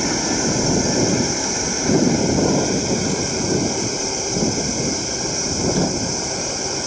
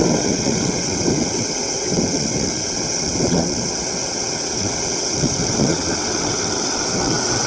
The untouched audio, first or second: first